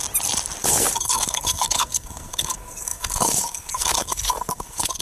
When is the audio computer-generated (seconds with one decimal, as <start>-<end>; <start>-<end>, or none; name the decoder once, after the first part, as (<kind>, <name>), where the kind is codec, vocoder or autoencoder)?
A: 0.6-5.0 (codec, SNAC)